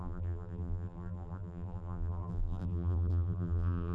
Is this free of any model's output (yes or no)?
no